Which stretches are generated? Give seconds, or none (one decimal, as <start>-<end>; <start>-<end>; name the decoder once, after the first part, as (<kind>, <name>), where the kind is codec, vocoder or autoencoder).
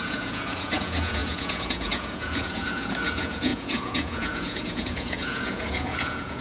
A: 0.0-6.4 (vocoder, Vocos)